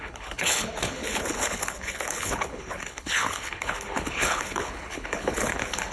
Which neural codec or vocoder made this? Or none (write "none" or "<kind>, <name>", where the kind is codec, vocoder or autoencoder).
codec, HILCodec